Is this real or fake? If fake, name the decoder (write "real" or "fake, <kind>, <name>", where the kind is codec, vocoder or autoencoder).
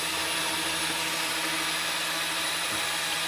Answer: real